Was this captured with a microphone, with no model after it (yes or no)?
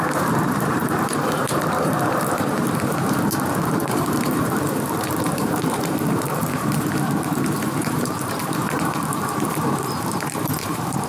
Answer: no